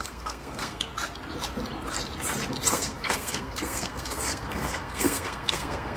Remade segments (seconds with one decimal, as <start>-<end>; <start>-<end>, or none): 0.0-0.9; 2.7-6.0